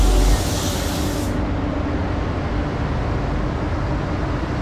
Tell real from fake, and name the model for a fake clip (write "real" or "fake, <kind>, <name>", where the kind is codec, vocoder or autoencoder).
real